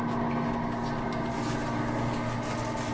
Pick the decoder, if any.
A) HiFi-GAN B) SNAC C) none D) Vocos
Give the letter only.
C